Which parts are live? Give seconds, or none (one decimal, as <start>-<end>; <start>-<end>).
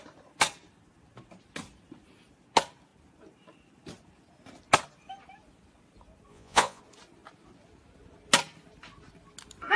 0.0-6.3; 6.8-9.8